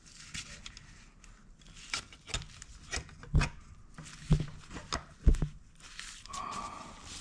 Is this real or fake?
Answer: real